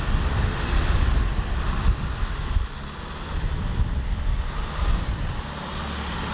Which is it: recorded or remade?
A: recorded